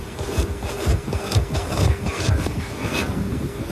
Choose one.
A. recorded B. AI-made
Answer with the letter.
B